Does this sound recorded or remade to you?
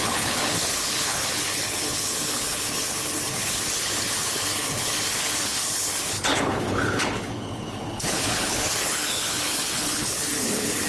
remade